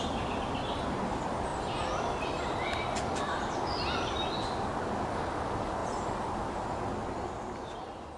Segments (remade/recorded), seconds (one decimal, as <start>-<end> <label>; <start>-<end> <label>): 0.0-8.2 recorded